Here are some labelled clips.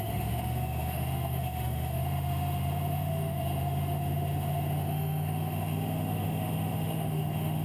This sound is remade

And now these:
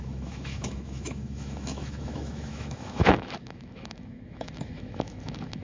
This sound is remade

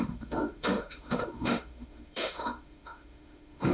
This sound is remade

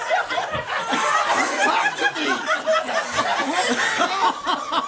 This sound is recorded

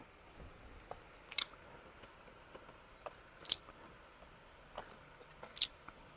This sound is recorded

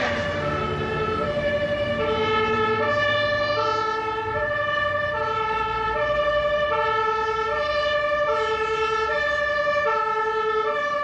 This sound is recorded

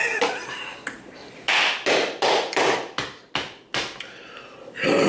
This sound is recorded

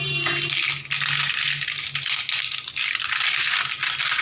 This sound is recorded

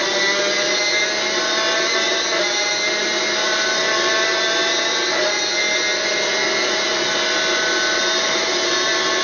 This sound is recorded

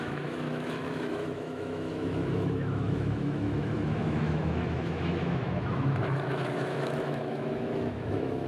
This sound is remade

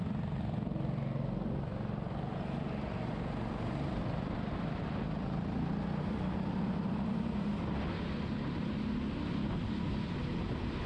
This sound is recorded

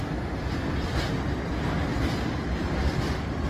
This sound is recorded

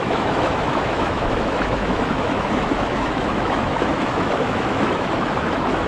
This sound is remade